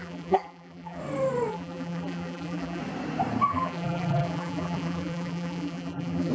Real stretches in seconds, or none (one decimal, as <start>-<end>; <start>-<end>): 1.0-1.5; 2.8-3.5